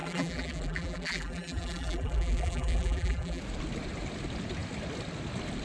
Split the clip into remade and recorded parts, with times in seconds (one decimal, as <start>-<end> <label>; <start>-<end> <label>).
0.0-3.4 remade; 3.4-5.6 recorded